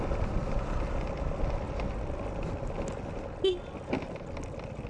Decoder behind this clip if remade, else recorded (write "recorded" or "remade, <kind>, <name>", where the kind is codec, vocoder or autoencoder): recorded